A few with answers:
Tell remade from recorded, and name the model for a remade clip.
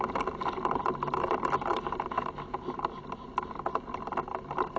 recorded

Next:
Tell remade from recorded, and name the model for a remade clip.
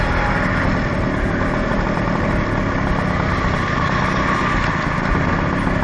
recorded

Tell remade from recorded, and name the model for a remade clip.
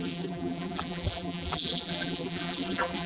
remade, vocoder, BigVGAN v2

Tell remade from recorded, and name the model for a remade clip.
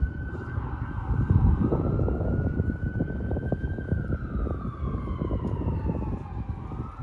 recorded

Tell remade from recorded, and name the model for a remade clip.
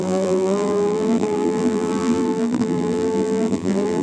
remade, vocoder, BigVGAN v2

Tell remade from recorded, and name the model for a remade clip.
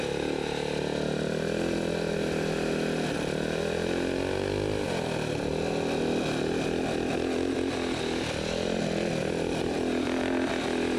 recorded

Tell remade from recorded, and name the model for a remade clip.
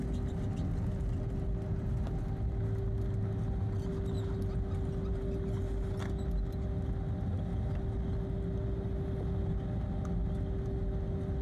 recorded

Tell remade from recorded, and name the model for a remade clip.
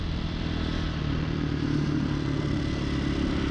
remade, vocoder, BigVGAN v2